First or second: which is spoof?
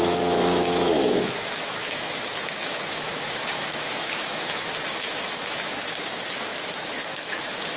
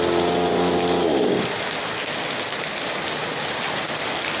first